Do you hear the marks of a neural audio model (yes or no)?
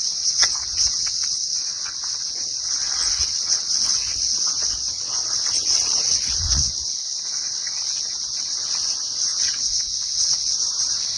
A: yes